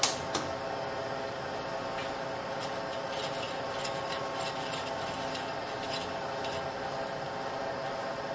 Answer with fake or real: real